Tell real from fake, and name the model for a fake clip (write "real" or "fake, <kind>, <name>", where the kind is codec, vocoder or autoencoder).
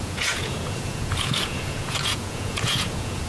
fake, vocoder, Vocos